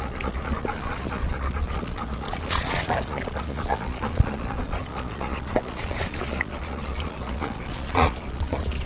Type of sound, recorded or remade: remade